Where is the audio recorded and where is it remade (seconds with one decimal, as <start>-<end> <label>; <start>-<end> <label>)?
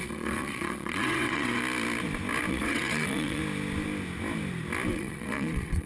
0.0-1.6 remade; 1.6-2.5 recorded; 2.5-3.4 remade; 3.4-4.9 recorded; 4.9-5.9 remade